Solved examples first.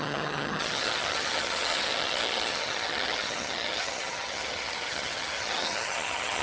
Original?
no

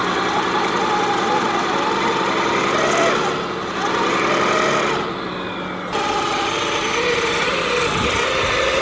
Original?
yes